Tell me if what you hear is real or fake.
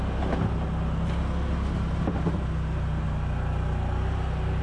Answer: real